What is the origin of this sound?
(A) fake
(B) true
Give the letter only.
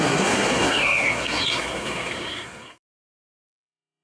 A